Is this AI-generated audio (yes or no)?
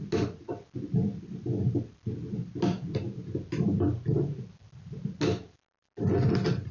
no